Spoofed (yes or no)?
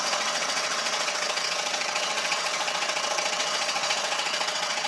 yes